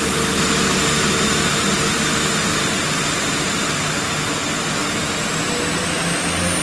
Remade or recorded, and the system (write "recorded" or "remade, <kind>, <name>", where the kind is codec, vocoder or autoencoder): recorded